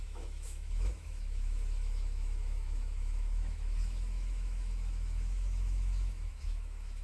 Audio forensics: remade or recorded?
remade